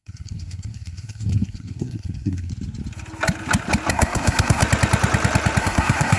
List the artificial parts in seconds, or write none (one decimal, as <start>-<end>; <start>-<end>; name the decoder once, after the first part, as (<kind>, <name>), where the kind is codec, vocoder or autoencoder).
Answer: 0.0-2.5 (codec, SNAC); 3.9-4.6; 5.6-6.2